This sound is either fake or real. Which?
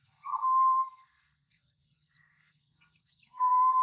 fake